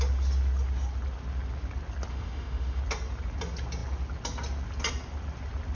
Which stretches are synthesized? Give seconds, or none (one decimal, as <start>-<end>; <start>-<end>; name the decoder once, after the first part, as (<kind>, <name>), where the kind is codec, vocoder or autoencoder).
2.1-2.8 (autoencoder, DAC-VAE)